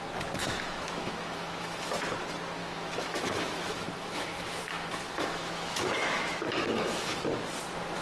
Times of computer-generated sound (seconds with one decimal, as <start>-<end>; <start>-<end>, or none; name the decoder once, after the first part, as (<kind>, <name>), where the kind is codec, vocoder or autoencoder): 0.4-1.9 (autoencoder, DAC-VAE); 2.6-7.2